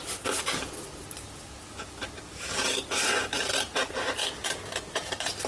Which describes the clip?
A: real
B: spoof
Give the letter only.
A